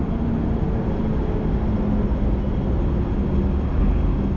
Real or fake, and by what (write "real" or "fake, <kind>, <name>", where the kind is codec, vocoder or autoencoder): real